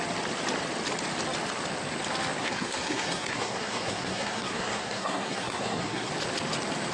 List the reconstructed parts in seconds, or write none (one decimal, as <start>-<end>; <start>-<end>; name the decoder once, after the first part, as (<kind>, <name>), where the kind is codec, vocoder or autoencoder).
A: 2.4-6.1 (codec, SNAC)